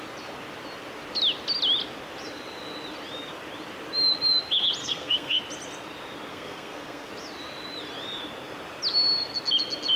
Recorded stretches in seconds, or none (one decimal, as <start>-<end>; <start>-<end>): 0.0-4.8; 5.4-6.3; 7.1-10.0

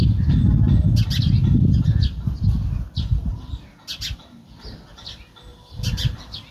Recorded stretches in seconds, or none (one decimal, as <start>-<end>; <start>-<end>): 0.0-6.5

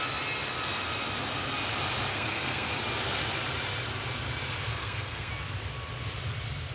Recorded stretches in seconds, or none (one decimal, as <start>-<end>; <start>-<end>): 0.0-2.1; 2.8-4.7; 5.3-6.7

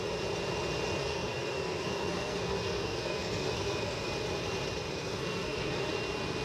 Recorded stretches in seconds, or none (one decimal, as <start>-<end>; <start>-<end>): 0.0-1.0; 4.1-4.9; 5.9-6.4

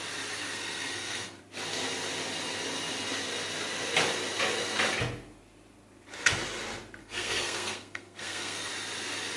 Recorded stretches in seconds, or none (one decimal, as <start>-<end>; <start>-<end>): 0.0-0.4; 1.4-7.0; 8.7-9.4